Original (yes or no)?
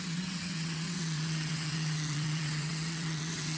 no